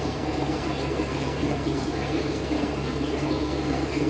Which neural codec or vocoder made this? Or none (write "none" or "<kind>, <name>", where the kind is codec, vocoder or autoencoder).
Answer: codec, SNAC